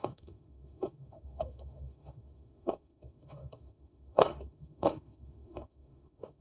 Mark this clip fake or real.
fake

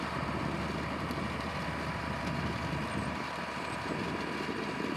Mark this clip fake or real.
fake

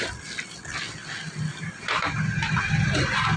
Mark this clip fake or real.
real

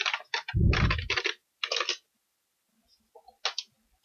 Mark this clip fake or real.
real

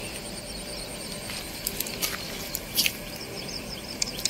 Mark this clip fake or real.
real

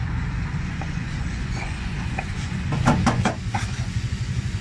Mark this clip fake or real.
fake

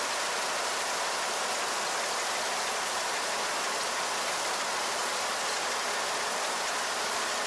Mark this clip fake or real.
fake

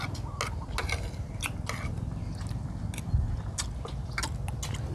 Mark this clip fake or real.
real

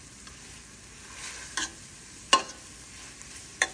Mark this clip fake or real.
real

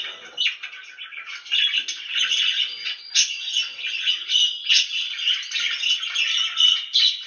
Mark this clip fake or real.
real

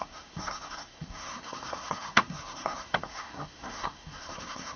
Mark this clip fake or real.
fake